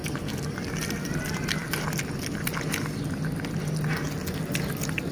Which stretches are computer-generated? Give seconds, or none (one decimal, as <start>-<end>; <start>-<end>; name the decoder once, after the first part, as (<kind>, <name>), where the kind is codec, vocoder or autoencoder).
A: 0.0-1.2 (vocoder, BigVGAN v2)